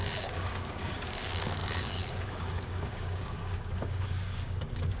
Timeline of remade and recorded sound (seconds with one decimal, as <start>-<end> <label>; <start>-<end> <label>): 0.0-5.0 remade